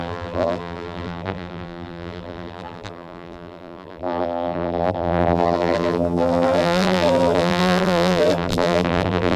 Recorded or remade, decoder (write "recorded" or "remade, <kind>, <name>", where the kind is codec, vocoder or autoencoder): remade, vocoder, BigVGAN v2